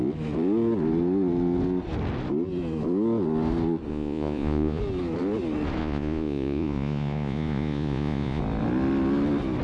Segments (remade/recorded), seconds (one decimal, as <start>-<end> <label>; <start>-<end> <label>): 0.0-3.9 recorded; 3.9-4.8 remade; 4.8-5.8 recorded; 5.8-8.4 remade; 8.4-9.6 recorded